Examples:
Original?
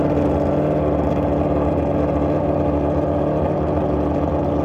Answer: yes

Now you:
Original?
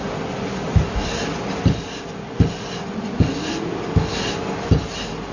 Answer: yes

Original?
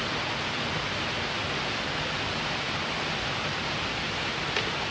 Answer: yes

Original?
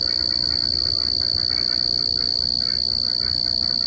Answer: yes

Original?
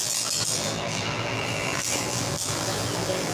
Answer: no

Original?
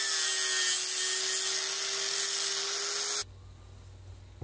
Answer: yes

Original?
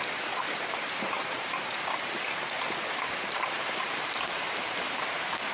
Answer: no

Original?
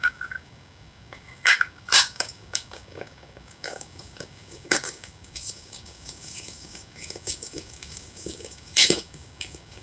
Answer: no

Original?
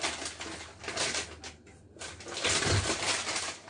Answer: yes